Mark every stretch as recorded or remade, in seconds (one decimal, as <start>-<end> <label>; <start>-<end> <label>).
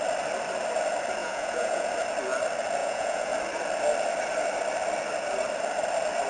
0.0-1.2 recorded; 1.2-1.9 remade; 1.9-2.8 recorded; 2.8-3.3 remade; 3.3-6.3 recorded